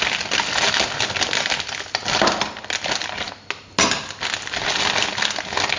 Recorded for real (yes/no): yes